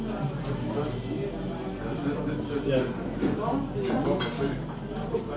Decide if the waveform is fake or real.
real